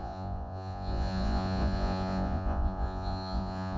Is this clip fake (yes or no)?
yes